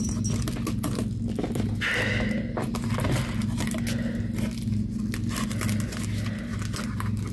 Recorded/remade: recorded